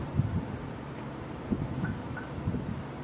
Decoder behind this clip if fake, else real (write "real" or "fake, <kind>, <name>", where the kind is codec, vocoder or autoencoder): fake, vocoder, BigVGAN v2